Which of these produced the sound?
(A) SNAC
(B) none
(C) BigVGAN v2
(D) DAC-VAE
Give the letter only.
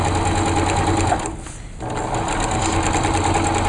B